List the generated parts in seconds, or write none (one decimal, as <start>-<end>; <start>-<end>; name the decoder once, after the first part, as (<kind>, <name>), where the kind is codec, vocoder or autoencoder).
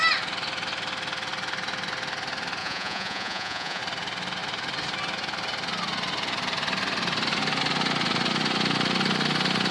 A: 2.6-3.8 (vocoder, Vocos)